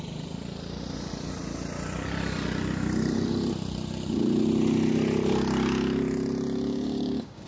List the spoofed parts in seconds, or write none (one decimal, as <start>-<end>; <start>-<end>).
6.7-7.5

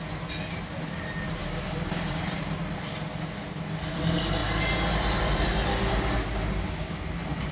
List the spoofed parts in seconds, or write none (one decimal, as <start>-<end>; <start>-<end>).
1.4-2.2; 5.7-7.0